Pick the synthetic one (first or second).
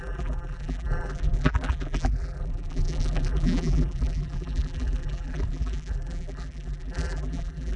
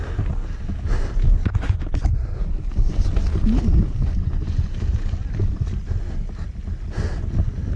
first